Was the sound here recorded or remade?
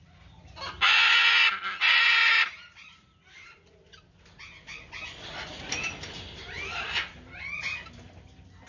recorded